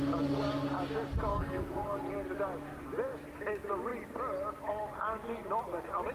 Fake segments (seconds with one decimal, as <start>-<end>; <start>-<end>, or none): 1.3-2.0